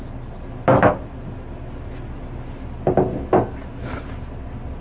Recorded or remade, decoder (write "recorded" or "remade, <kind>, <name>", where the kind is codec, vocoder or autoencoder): recorded